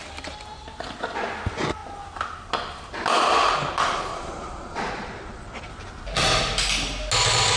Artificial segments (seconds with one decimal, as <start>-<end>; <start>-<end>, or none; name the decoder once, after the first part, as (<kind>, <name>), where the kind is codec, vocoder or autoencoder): 4.1-5.7 (vocoder, Vocos)